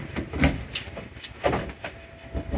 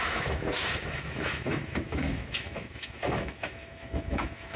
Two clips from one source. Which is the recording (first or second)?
first